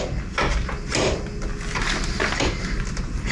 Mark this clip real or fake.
real